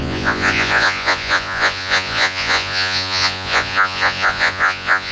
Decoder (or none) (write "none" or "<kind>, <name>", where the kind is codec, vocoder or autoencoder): vocoder, Vocos